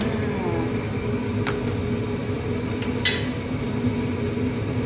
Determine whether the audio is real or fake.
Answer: real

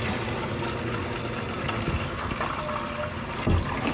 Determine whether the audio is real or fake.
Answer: real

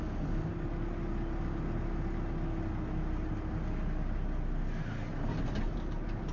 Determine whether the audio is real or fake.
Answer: real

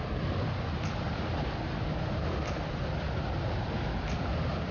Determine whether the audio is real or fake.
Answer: real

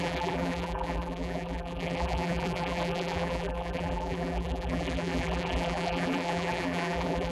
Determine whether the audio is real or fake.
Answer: fake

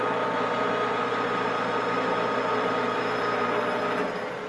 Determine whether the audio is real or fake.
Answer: real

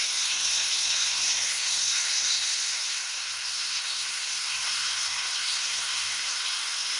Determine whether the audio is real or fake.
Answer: fake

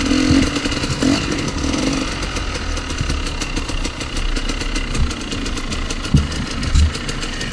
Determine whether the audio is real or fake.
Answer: real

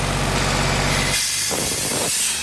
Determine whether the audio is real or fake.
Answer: real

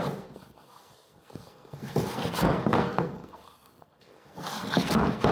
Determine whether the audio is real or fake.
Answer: fake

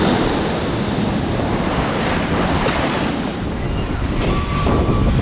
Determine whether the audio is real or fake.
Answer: fake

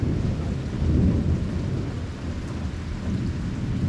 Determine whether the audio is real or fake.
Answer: real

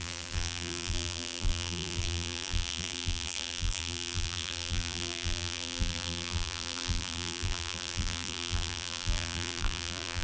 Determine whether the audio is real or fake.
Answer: fake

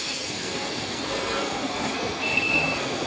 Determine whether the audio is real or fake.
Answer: fake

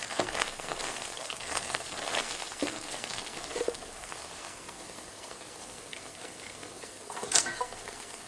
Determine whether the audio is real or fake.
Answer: fake